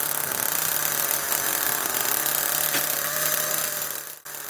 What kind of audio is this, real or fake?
real